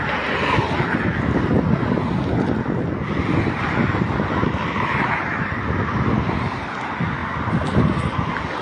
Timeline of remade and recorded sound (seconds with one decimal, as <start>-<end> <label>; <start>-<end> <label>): 0.0-8.6 recorded